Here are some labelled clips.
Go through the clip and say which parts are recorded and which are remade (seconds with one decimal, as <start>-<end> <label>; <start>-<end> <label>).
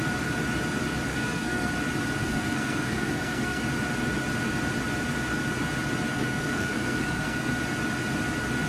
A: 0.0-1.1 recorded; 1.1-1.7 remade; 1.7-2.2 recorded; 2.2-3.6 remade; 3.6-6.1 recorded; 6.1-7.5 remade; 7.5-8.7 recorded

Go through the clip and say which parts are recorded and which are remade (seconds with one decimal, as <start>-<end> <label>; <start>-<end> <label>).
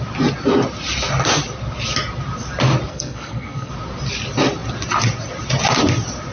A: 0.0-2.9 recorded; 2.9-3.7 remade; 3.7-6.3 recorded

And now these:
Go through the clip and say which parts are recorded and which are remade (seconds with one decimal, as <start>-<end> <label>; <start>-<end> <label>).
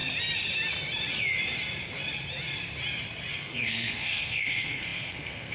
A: 0.0-3.3 recorded; 3.3-5.5 remade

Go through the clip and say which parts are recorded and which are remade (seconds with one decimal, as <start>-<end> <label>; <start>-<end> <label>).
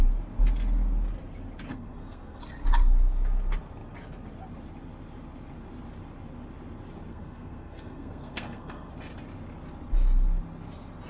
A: 0.0-1.7 recorded; 1.7-2.4 remade; 2.4-7.1 recorded; 7.1-8.9 remade; 8.9-11.1 recorded